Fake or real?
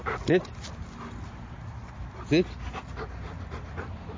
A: real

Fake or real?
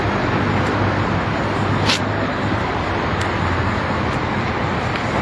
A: real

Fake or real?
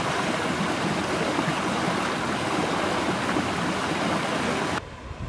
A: real